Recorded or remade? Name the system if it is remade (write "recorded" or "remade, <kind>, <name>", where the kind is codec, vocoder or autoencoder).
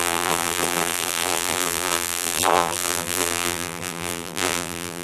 remade, vocoder, BigVGAN v2